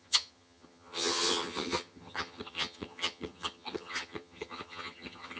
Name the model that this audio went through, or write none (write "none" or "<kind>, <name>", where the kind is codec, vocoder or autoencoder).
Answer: vocoder, HiFi-GAN